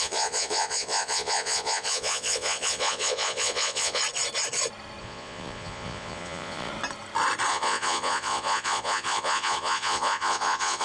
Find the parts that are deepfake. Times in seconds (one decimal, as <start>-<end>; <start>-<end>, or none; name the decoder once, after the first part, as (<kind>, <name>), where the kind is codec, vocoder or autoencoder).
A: 0.0-4.0 (vocoder, Vocos); 5.0-6.7; 7.5-10.8